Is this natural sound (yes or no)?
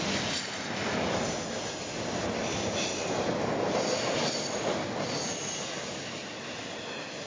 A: yes